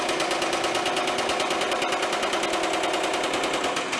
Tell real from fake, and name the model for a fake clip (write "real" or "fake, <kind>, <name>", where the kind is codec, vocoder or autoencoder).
real